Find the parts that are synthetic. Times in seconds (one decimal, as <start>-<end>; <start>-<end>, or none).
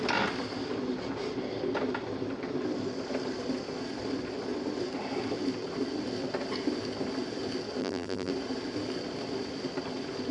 7.8-8.3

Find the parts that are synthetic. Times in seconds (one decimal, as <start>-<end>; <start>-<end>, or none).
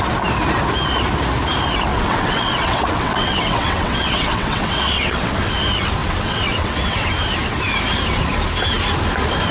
1.9-5.3; 6.0-7.1